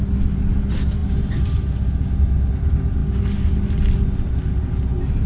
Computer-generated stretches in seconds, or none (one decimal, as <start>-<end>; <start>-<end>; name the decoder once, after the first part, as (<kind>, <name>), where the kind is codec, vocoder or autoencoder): 1.0-1.6 (vocoder, BigVGAN v2)